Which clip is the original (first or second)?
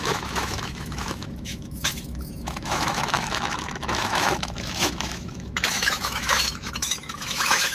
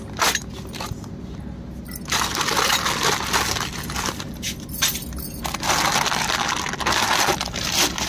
second